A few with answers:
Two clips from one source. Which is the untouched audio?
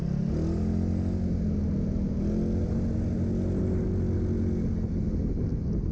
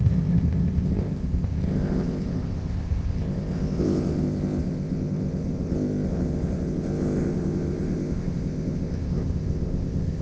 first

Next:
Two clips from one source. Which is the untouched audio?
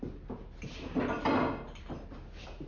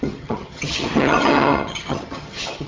first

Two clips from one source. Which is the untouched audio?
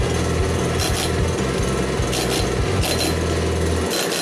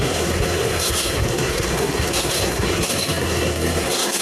first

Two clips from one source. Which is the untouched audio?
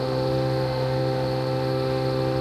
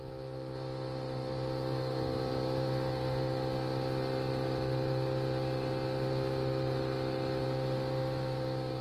second